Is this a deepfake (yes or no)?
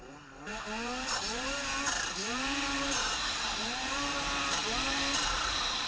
yes